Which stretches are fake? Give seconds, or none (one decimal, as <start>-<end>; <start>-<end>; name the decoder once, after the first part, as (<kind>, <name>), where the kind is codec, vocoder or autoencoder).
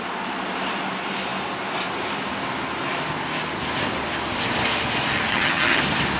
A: 5.3-5.8 (vocoder, HiFi-GAN)